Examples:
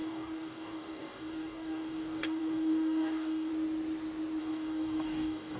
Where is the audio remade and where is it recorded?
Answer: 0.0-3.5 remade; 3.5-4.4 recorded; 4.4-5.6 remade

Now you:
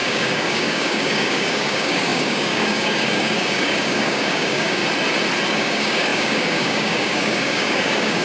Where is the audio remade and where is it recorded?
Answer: 0.0-4.8 remade; 4.8-5.5 recorded; 5.5-8.2 remade

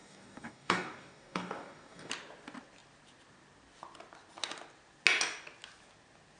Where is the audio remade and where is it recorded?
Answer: 0.0-2.1 remade; 2.1-6.4 recorded

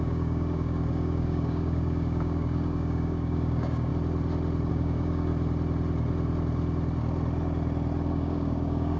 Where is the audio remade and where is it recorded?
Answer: 0.0-3.9 remade; 3.9-4.7 recorded; 4.7-5.3 remade; 5.3-8.1 recorded; 8.1-9.0 remade

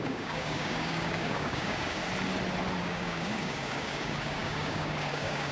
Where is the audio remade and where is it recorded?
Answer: 0.0-2.0 remade; 2.0-2.8 recorded; 2.8-5.5 remade

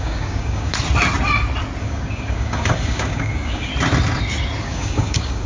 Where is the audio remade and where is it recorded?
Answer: 0.0-0.7 remade; 0.7-1.8 recorded; 1.8-3.7 remade; 3.7-4.6 recorded; 4.6-5.5 remade

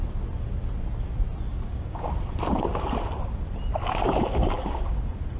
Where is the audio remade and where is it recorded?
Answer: 0.0-1.5 recorded; 1.5-2.1 remade; 2.1-3.8 recorded; 3.8-5.0 remade; 5.0-5.4 recorded